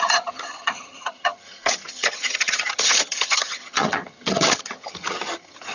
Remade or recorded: remade